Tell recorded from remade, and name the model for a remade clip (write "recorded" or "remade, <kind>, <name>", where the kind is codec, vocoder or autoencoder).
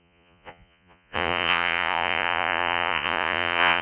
remade, vocoder, Vocos